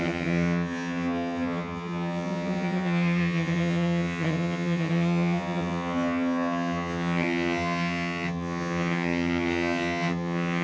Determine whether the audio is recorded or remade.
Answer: remade